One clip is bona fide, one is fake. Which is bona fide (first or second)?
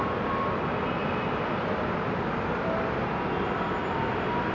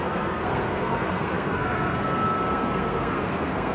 first